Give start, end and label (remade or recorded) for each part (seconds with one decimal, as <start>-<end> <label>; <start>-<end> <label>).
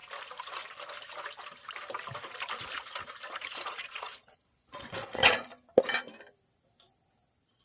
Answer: 0.0-3.5 recorded; 3.5-5.5 remade; 5.5-7.6 recorded